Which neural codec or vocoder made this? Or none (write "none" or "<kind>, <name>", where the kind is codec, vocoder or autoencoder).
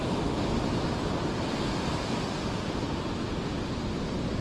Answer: none